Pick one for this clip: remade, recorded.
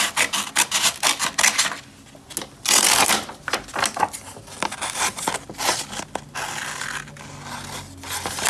recorded